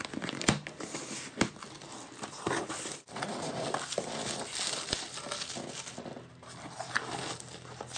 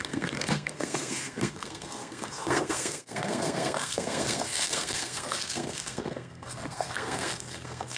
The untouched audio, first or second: first